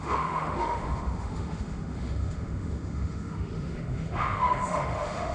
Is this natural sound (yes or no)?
no